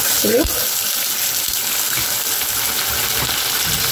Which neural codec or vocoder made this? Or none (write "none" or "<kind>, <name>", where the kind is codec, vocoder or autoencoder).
none